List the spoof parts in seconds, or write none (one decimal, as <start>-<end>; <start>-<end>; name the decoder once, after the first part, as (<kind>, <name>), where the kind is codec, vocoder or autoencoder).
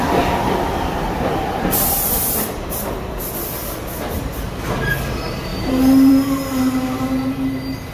none